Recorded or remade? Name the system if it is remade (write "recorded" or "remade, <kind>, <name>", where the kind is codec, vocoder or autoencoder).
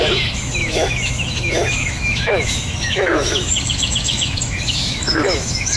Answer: remade, autoencoder, DAC-VAE